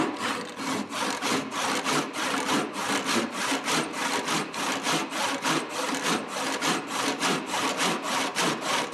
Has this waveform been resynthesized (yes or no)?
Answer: no